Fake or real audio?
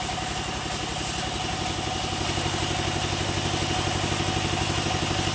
real